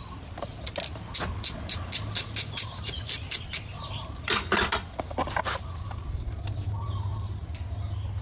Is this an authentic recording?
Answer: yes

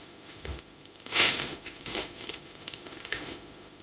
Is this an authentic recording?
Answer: no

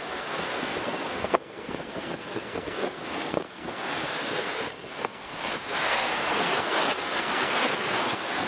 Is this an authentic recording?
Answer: no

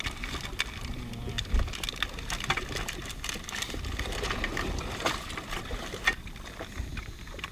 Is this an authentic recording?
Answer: yes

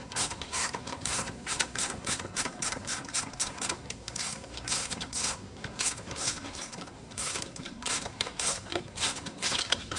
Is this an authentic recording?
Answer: no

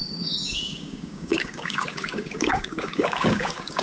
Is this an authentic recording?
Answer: no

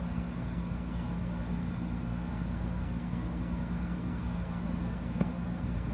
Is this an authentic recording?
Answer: no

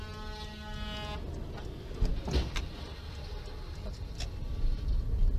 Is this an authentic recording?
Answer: yes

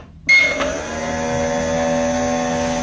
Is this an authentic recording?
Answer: yes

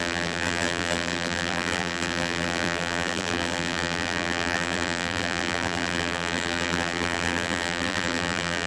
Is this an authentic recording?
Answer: no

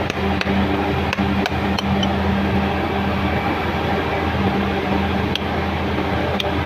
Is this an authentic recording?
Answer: yes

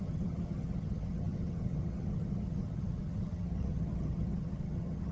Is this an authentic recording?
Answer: no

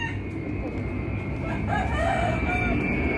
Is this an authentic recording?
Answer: yes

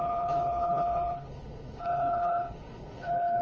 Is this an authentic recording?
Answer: no